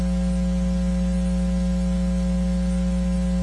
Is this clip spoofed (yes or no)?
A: no